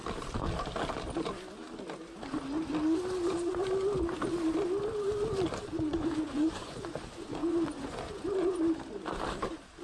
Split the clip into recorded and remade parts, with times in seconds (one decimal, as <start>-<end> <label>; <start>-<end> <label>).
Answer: 0.0-5.7 recorded; 5.7-8.7 remade; 8.7-9.8 recorded